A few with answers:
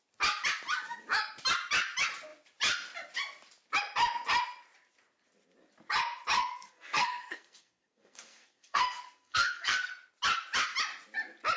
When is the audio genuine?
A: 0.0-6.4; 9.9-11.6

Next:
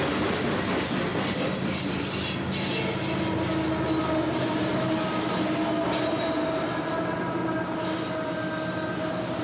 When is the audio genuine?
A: 0.0-9.4

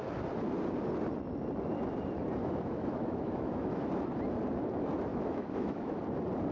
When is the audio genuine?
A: 0.0-2.4; 3.8-5.1; 6.0-6.5

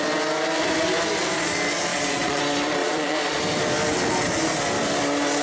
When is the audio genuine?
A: 0.0-1.9; 2.4-2.8; 3.4-5.4

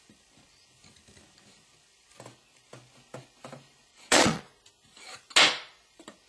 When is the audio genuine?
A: 0.0-3.9; 4.4-6.3

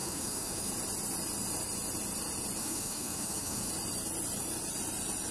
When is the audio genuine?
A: 0.7-2.6; 3.7-5.3

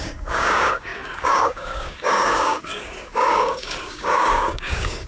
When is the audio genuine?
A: none

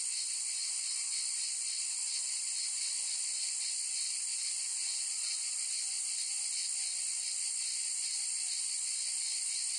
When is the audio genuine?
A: 0.0-4.7; 5.2-9.8